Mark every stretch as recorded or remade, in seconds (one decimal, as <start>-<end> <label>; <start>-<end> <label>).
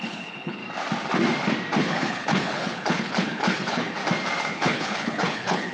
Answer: 0.0-0.6 remade; 0.6-1.8 recorded; 1.8-4.0 remade; 4.0-4.5 recorded; 4.5-5.7 remade